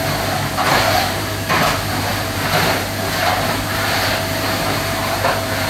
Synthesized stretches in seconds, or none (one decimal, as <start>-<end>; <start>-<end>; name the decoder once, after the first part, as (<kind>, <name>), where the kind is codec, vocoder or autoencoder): 0.7-1.5 (vocoder, BigVGAN v2); 2.1-5.7